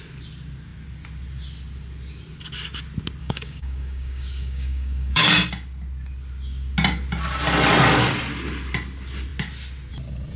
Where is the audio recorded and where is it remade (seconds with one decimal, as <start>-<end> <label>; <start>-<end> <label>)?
0.0-3.2 recorded; 3.2-5.3 remade; 5.3-10.4 recorded

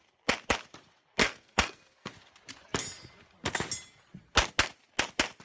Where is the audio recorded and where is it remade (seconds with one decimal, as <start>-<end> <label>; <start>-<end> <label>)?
0.0-1.2 recorded; 1.2-2.1 remade; 2.1-5.4 recorded